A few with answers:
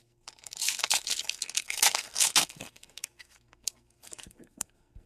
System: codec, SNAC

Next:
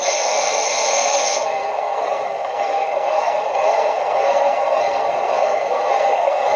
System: codec, SNAC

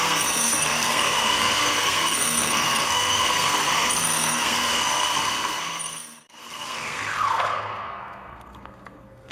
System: codec, SNAC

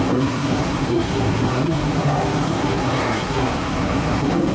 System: codec, SNAC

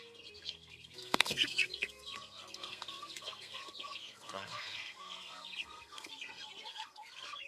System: codec, SNAC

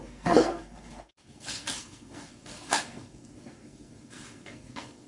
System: codec, SNAC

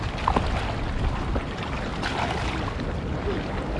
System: none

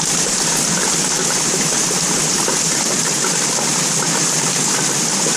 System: none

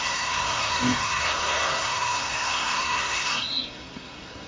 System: codec, SNAC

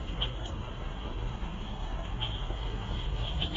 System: codec, SNAC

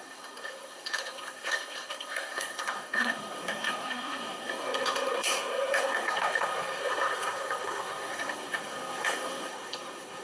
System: codec, SNAC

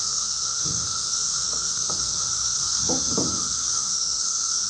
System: codec, SNAC